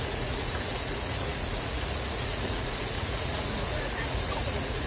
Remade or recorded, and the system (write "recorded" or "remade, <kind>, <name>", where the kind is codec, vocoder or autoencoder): remade, vocoder, Vocos